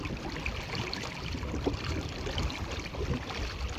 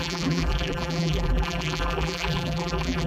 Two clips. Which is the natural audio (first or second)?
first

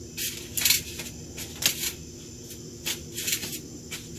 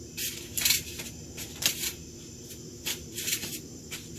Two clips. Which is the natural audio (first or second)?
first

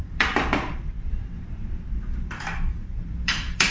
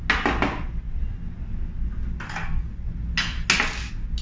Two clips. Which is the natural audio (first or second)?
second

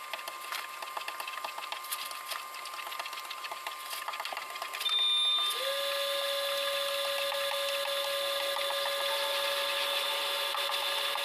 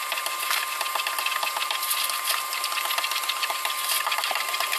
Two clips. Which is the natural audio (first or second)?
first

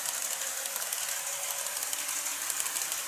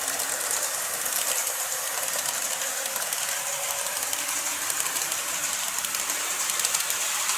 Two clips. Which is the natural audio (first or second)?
first